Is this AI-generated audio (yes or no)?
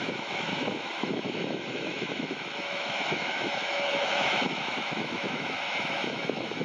yes